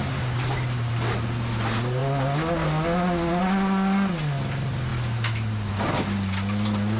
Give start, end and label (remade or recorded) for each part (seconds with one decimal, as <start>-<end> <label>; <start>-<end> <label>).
0.0-7.0 recorded